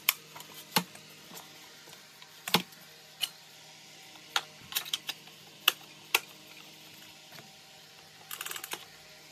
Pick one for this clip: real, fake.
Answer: real